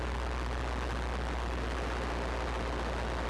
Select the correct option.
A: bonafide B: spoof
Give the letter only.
A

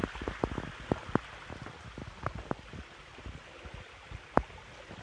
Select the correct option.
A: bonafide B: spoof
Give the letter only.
A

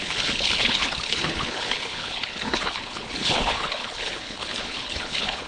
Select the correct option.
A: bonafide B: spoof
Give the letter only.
B